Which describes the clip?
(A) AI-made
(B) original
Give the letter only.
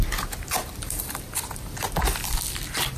B